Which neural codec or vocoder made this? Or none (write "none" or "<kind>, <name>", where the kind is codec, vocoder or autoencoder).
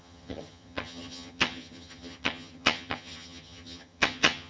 vocoder, HiFi-GAN